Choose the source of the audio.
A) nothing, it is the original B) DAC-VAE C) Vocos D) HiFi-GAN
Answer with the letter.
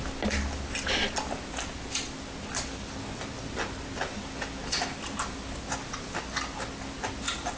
A